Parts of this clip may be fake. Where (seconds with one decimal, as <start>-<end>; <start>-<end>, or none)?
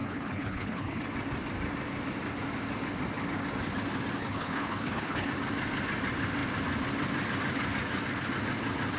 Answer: 0.0-1.0; 4.2-5.3